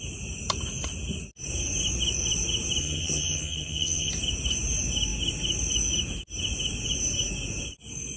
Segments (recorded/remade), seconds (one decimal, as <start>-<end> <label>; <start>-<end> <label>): 0.0-2.8 recorded; 2.8-4.1 remade; 4.1-8.2 recorded